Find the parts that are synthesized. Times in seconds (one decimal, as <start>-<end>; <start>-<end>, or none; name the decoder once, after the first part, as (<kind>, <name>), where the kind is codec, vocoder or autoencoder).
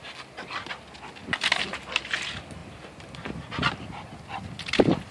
none